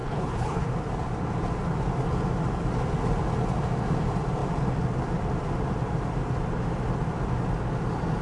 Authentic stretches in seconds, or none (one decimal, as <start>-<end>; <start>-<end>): 0.7-8.2